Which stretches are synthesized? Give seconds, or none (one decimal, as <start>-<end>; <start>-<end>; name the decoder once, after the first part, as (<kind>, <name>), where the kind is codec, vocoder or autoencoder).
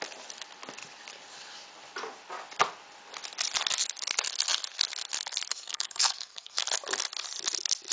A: 5.5-6.6 (codec, SNAC)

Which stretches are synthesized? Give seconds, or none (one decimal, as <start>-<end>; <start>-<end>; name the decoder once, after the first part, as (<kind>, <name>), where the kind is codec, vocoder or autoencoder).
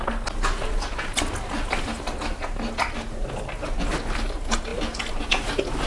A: none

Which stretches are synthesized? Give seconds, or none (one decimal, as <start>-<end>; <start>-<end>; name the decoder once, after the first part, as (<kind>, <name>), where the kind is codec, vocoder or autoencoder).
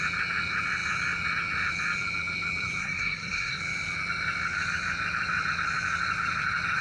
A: 2.8-3.6 (codec, SNAC)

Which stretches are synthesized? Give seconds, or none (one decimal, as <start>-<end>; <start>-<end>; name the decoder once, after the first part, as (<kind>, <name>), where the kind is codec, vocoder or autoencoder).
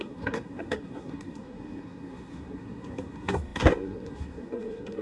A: 0.0-5.0 (codec, SNAC)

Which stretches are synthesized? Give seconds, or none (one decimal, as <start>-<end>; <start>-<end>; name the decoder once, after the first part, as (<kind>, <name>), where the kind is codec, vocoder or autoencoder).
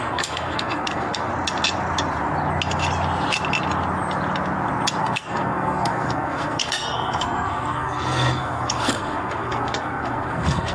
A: 0.0-1.3 (codec, SNAC); 5.0-10.7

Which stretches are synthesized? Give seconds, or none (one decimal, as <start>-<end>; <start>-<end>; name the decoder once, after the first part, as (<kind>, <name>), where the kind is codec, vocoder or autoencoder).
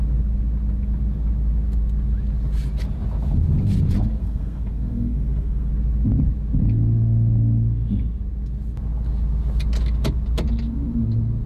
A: 4.2-5.7 (codec, SNAC)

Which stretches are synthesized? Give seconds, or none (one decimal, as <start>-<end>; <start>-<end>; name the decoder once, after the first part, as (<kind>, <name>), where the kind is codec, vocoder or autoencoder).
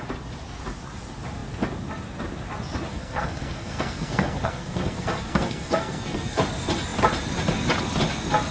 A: 2.9-6.4 (codec, SNAC)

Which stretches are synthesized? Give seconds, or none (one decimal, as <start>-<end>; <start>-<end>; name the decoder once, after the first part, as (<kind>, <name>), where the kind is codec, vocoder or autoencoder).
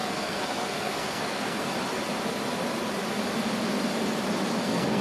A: 0.0-1.7 (codec, SNAC); 4.6-5.0